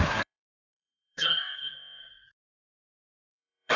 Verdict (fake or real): fake